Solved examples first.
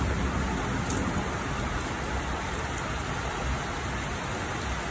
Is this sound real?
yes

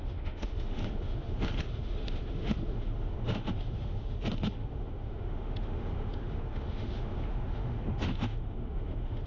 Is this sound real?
no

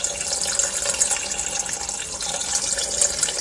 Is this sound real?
yes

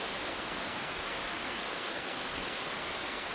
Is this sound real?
no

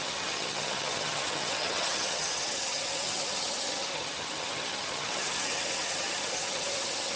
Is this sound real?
no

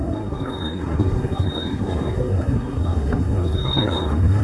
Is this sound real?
no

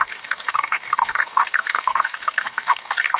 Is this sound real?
no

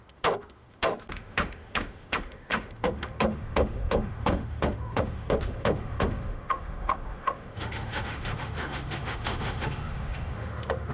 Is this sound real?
no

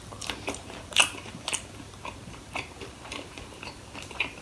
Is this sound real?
no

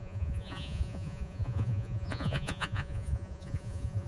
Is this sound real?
no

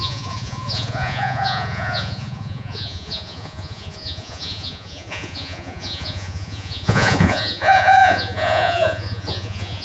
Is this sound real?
no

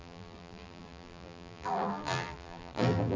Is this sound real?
no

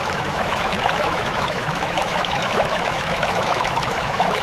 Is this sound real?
no